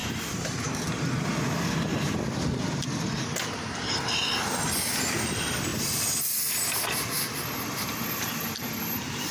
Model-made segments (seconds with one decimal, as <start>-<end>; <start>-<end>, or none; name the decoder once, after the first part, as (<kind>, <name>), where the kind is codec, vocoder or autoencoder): none